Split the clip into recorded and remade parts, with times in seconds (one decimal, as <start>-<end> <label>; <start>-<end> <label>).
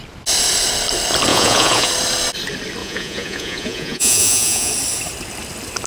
0.0-1.3 recorded; 1.3-1.9 remade; 1.9-2.8 recorded; 2.8-4.7 remade; 4.7-5.9 recorded